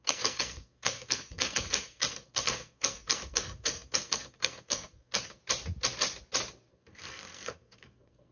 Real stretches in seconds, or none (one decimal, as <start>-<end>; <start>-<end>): 5.4-6.7